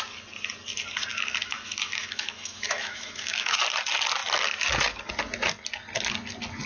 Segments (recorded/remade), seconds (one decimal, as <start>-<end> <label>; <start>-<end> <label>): 0.0-1.1 recorded; 1.1-3.6 remade; 3.6-6.7 recorded

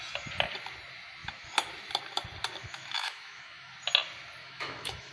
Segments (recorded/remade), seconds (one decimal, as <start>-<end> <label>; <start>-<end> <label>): 0.0-2.6 recorded; 2.6-3.7 remade; 3.7-4.4 recorded; 4.4-5.1 remade

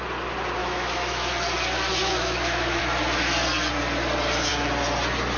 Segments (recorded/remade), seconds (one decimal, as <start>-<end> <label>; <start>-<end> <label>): 0.0-0.6 recorded; 0.6-1.3 remade; 1.3-2.0 recorded; 2.0-2.8 remade; 2.8-5.4 recorded

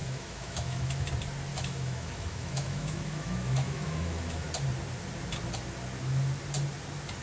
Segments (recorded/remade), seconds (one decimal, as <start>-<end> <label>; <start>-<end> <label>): 0.0-1.1 remade; 1.1-1.5 recorded; 1.5-4.5 remade; 4.5-7.2 recorded

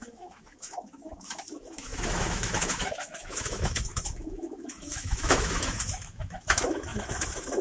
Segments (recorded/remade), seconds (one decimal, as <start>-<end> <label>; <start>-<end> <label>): 0.0-7.6 remade

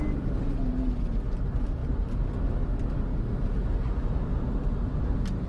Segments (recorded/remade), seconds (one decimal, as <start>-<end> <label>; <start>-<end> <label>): 0.0-5.5 recorded